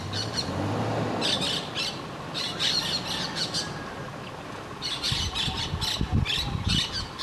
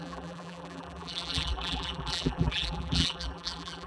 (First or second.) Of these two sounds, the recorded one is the first